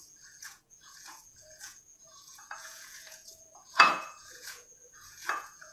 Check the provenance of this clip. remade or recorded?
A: remade